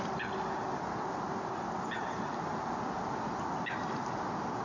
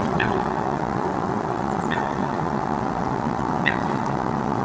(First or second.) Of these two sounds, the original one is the first